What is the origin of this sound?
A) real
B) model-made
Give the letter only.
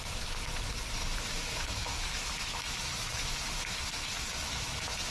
B